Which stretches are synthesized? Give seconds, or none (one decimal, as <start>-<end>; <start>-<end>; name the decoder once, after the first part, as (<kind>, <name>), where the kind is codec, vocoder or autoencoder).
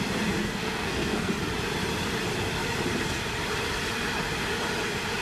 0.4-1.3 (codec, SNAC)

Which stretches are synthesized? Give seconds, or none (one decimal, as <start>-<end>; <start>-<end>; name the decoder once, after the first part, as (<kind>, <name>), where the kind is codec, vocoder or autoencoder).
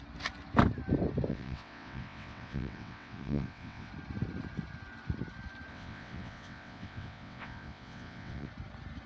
1.3-3.9 (vocoder, WaveNeXt); 5.7-8.5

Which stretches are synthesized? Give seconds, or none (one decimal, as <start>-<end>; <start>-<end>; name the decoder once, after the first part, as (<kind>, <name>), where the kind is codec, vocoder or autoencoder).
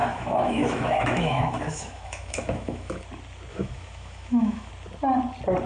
0.0-3.0 (autoencoder, DAC-VAE); 3.5-4.7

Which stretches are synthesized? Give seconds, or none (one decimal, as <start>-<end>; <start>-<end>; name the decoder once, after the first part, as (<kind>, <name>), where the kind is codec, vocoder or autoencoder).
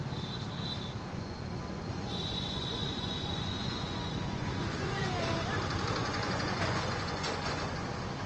1.1-5.1 (vocoder, Vocos); 6.0-7.7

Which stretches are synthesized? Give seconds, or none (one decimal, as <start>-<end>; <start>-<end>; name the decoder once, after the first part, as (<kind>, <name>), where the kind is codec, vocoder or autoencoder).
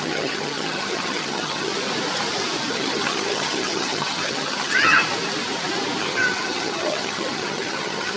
0.0-1.7 (vocoder, HiFi-GAN); 2.7-5.0; 6.0-8.2